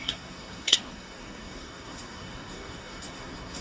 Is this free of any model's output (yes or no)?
no